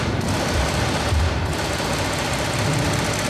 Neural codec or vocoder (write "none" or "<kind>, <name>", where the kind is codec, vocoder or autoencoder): none